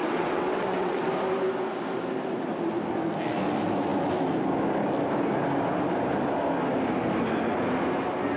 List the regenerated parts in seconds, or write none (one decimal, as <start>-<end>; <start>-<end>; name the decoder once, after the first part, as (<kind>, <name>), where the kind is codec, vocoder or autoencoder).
0.0-1.1 (vocoder, WaveNeXt)